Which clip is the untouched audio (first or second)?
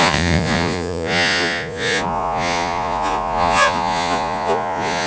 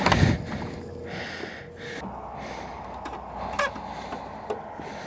second